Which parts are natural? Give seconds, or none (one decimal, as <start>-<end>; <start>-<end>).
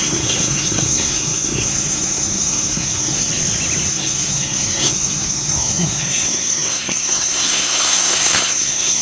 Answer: 3.3-3.9